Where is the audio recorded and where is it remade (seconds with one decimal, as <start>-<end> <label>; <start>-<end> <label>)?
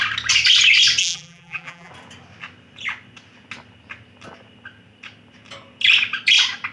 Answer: 0.0-1.0 recorded; 1.0-1.9 remade; 1.9-6.7 recorded